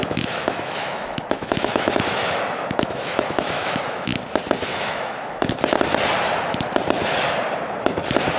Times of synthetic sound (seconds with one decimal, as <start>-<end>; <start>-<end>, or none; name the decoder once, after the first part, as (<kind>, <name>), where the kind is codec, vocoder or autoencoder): 0.0-4.2 (autoencoder, DAC-VAE); 4.7-5.5